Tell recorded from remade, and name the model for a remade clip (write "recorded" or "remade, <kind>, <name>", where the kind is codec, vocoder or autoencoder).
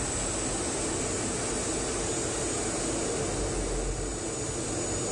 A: recorded